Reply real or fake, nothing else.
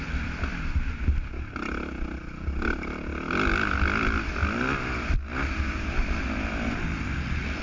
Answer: real